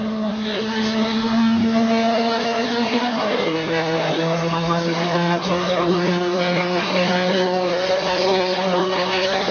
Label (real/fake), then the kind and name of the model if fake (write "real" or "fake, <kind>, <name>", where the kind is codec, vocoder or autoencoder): fake, codec, SNAC